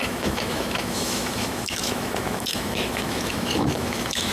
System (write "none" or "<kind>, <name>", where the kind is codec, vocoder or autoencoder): autoencoder, DAC-VAE